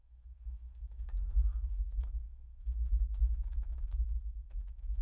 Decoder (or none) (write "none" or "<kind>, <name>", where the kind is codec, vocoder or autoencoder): codec, SNAC